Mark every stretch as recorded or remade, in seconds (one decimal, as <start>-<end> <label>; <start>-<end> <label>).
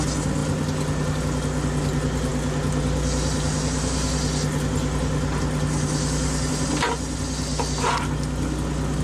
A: 0.0-9.0 recorded